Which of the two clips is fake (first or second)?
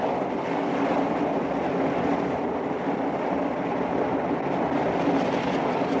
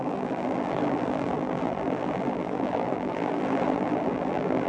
second